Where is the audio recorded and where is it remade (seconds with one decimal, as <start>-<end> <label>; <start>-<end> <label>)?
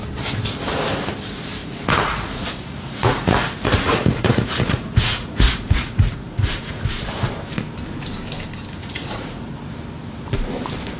0.0-1.6 recorded; 1.6-6.8 remade; 6.8-8.8 recorded; 8.8-9.5 remade; 9.5-11.0 recorded